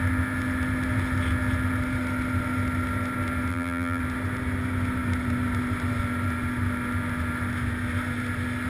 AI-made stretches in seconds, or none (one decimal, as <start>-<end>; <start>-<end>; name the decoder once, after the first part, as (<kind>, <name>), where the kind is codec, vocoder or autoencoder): 3.5-4.0 (vocoder, BigVGAN v2)